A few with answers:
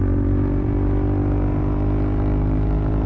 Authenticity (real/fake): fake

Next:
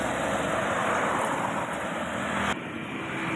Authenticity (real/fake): real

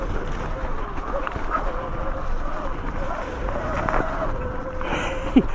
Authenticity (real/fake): real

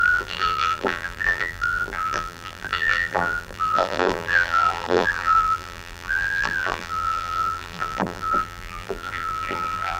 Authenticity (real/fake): fake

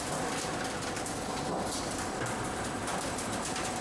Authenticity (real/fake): fake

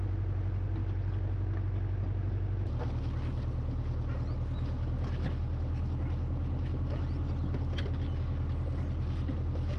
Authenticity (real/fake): real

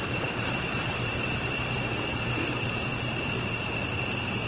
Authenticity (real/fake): fake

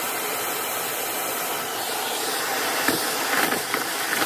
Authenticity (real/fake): fake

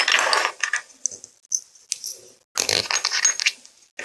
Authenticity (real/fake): real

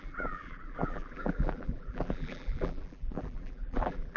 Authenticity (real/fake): fake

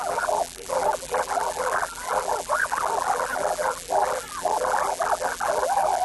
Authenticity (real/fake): fake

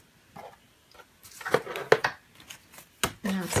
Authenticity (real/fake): real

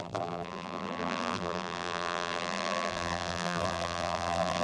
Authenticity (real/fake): fake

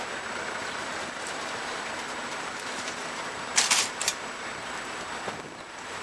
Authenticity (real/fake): fake